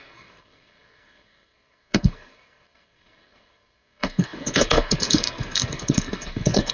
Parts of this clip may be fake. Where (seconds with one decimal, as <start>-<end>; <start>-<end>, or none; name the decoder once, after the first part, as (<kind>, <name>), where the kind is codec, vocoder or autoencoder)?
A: 0.0-6.7 (codec, SNAC)